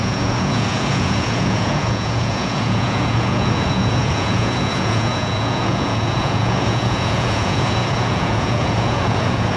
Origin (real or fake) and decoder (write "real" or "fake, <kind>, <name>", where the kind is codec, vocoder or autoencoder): fake, vocoder, Vocos